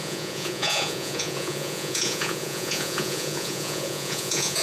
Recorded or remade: remade